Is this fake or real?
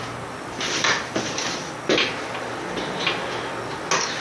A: real